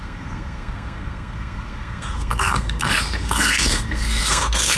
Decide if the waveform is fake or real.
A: fake